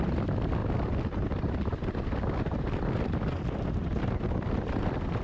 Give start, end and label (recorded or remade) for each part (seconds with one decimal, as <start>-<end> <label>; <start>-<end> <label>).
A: 0.0-5.2 recorded